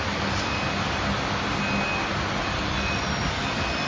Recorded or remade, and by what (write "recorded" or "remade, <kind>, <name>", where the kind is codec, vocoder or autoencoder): recorded